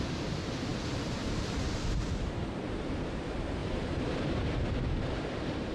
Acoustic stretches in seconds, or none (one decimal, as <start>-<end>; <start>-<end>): 0.0-0.7; 2.2-3.6; 4.3-5.7